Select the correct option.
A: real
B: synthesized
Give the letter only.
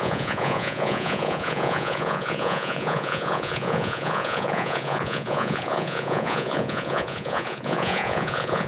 B